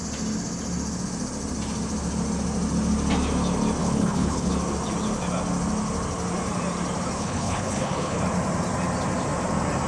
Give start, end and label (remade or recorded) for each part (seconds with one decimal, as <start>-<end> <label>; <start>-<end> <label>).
0.0-3.8 recorded; 3.8-4.5 remade; 4.5-7.2 recorded; 7.2-8.2 remade; 8.2-9.9 recorded